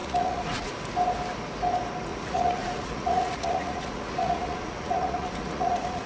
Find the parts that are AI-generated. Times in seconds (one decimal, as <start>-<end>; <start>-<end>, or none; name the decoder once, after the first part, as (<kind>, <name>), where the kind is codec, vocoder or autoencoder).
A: 0.0-0.7 (vocoder, Vocos); 2.1-6.1